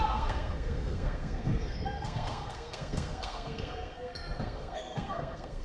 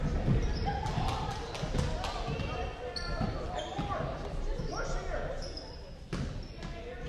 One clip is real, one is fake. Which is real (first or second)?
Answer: second